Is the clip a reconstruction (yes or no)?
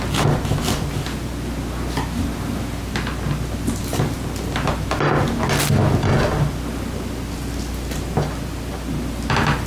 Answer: no